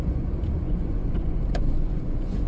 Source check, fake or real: fake